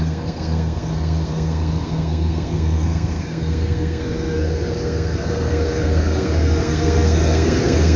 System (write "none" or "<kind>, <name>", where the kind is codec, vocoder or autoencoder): codec, SNAC